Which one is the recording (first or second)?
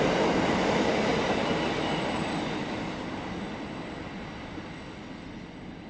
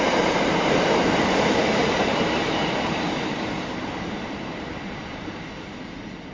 first